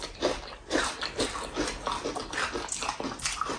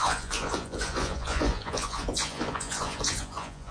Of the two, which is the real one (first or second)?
first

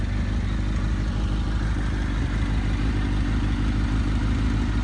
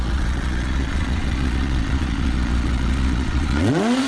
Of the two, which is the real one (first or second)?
first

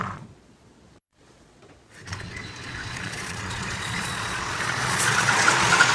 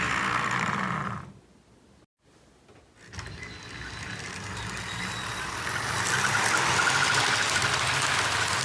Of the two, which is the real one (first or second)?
second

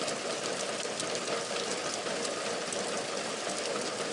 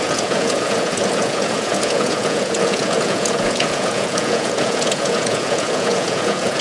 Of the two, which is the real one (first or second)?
first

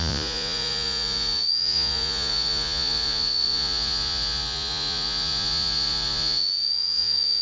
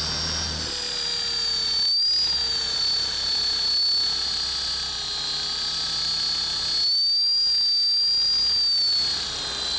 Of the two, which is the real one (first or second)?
second